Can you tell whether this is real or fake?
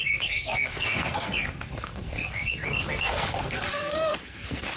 fake